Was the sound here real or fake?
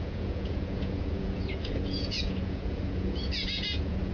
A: fake